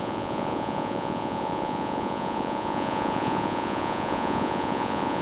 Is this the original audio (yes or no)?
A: no